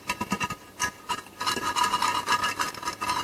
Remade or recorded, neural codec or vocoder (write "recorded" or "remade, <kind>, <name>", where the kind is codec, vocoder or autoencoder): recorded